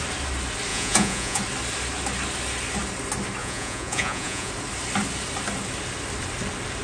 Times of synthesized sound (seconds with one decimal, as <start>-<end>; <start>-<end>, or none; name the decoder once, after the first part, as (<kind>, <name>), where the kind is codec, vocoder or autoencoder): 0.7-1.4 (vocoder, Vocos); 3.4-4.5